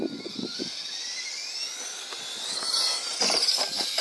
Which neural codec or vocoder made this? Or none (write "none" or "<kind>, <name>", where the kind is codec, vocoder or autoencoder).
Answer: none